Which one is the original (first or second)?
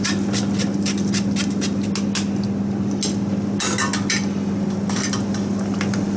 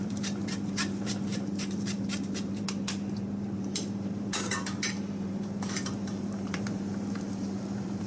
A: first